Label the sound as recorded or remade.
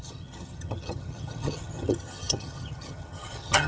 remade